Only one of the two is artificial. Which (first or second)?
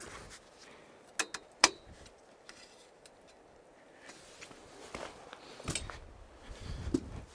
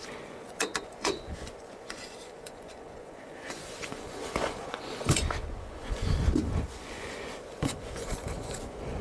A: second